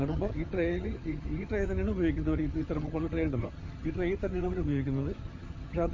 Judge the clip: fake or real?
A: fake